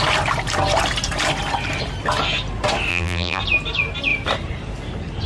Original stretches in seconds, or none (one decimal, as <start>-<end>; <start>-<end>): 0.0-2.9; 3.4-5.3